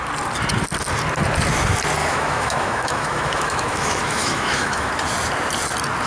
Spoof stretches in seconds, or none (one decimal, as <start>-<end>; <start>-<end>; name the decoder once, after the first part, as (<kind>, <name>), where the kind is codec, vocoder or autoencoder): 2.0-4.9 (autoencoder, DAC-VAE)